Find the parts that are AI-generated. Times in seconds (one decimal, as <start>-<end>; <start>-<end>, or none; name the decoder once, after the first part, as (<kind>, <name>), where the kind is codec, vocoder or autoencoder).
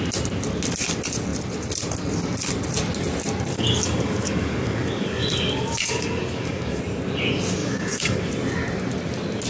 3.5-6.8 (codec, DAC); 7.6-8.3